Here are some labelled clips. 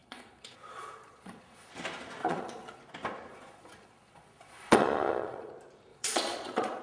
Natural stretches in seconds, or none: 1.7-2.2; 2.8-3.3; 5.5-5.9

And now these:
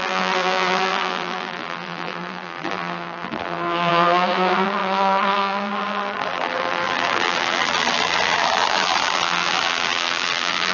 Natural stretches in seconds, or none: none

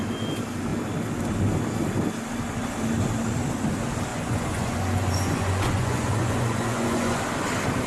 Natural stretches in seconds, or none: 0.0-4.1; 7.2-7.9

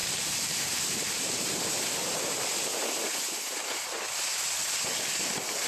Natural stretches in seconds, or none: 1.4-2.0; 2.5-5.7

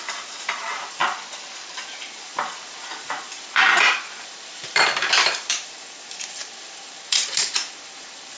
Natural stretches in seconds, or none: 1.0-2.0

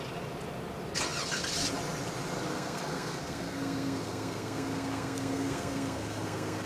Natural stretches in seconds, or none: 0.0-2.5

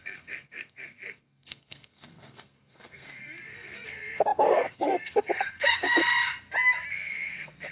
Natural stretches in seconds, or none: 6.0-6.9

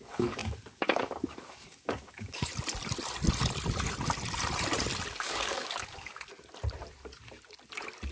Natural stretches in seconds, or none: 2.5-5.1; 6.3-8.1